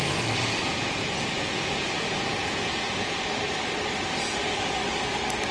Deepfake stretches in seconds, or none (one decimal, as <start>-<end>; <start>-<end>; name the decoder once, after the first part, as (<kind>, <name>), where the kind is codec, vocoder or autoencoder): 0.6-3.1 (vocoder, Vocos)